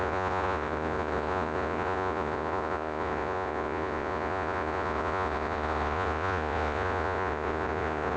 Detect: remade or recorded remade